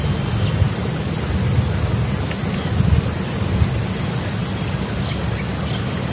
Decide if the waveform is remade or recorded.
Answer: recorded